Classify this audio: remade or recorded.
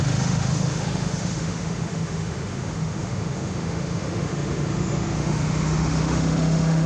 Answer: remade